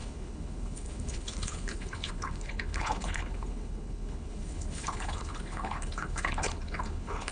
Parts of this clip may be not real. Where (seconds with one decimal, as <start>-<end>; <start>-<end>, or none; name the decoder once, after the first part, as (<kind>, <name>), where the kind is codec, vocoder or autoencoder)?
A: 0.0-7.3 (codec, HILCodec)